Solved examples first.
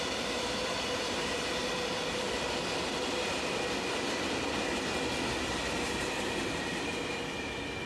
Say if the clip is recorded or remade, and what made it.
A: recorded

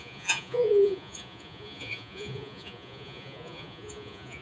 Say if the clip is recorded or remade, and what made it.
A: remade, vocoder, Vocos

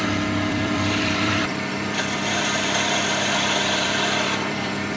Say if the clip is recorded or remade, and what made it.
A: remade, vocoder, BigVGAN v2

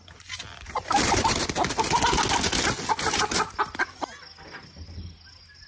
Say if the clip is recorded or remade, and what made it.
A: recorded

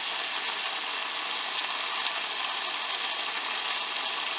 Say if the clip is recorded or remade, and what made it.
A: recorded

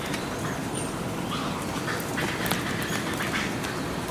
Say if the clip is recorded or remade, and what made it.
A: recorded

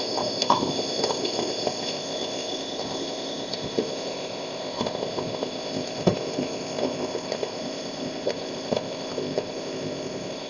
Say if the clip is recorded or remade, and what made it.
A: remade, codec, ZipCodec